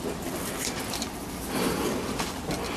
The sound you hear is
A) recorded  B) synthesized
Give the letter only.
A